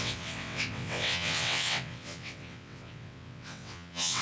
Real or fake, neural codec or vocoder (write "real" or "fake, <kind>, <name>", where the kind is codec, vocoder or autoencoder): fake, vocoder, WaveNeXt